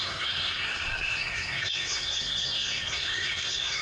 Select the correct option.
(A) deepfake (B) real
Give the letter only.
A